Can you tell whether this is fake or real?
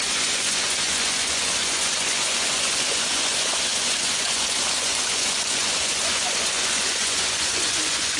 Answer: fake